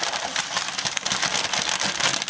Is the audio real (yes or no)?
yes